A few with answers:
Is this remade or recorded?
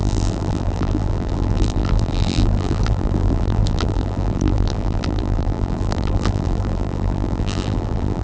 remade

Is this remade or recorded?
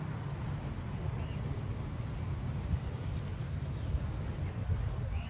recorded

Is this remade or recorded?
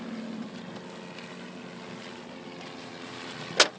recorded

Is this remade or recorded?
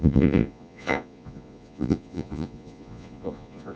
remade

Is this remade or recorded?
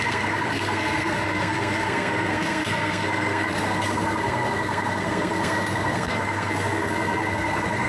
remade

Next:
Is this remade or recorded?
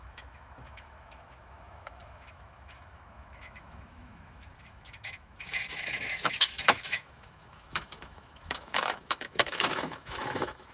remade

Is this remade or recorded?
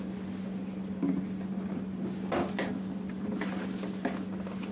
recorded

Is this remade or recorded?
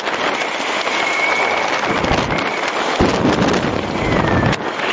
recorded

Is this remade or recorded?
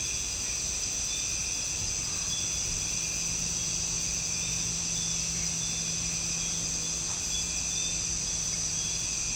recorded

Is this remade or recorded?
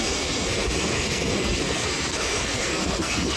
remade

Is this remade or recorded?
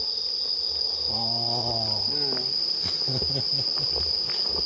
recorded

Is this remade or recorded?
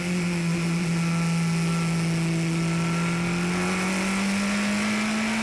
recorded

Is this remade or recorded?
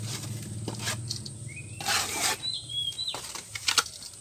recorded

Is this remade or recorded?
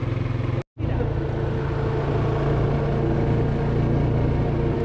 recorded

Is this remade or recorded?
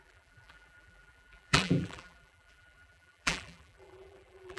remade